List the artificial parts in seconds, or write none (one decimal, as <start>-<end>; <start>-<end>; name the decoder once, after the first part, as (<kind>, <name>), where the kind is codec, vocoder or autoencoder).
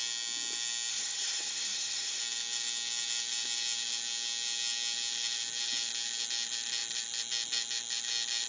0.9-2.2 (codec, SNAC)